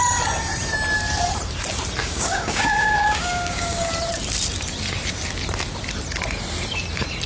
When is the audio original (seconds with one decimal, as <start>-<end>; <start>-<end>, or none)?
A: 0.0-2.0; 3.9-7.3